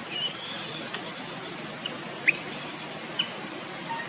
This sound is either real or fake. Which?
real